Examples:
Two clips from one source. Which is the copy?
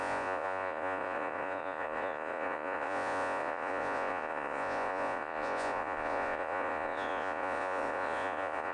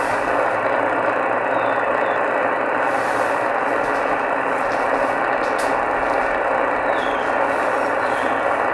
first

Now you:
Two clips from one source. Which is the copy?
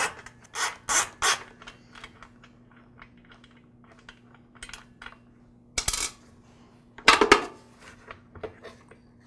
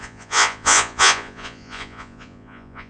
second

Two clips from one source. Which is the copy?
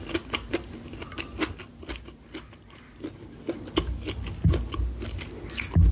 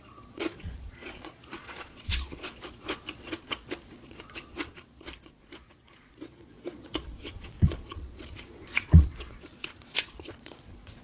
second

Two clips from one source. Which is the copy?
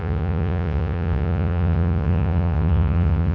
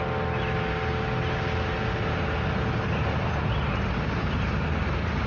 first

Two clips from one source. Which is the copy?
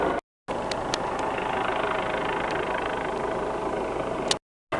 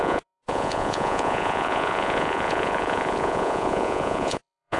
second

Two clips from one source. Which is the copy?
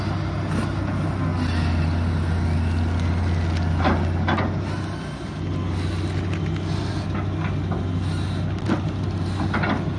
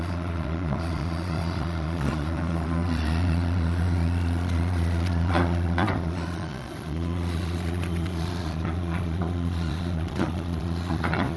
second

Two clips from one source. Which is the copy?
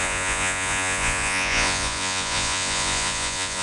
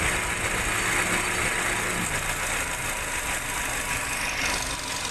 first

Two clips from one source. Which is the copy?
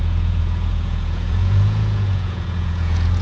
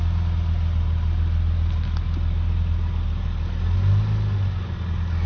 first